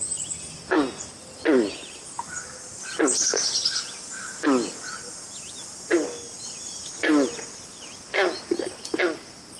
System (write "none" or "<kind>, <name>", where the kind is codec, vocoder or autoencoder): none